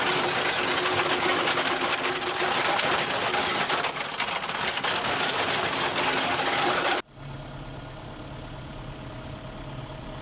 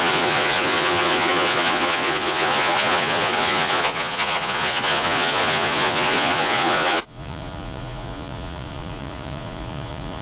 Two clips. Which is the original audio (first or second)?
first